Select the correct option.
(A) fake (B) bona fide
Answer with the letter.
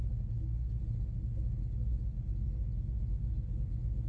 B